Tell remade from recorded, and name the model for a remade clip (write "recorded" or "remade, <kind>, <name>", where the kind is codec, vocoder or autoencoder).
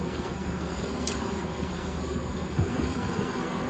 remade, codec, SNAC